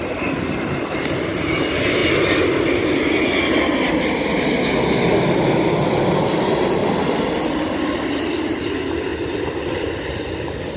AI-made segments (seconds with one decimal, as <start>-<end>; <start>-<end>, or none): none